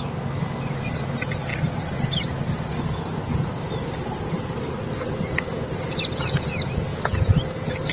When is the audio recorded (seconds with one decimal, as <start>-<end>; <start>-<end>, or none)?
0.0-3.3; 4.5-6.9